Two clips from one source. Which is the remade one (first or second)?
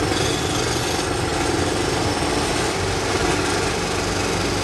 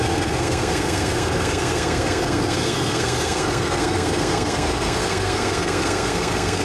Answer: second